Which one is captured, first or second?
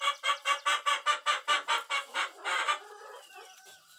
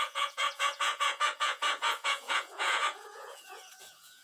first